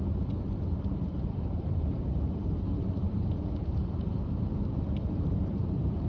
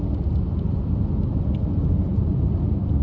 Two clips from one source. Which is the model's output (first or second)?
first